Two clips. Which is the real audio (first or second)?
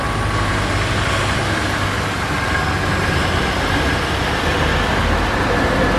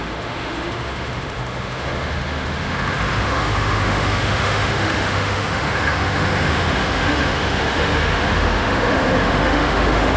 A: first